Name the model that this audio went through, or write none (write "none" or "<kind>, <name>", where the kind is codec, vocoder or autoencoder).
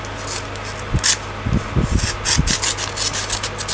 none